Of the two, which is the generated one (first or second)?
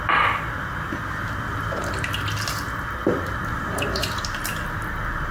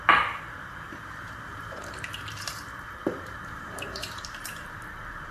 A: second